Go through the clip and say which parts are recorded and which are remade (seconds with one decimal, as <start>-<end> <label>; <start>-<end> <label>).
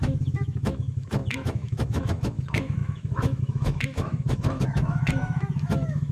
0.0-6.1 remade